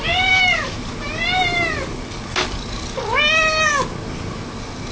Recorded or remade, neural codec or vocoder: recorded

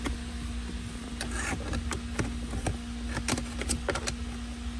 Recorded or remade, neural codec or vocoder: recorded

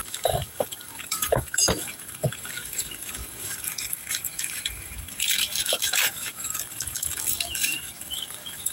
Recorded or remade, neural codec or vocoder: remade, codec, DAC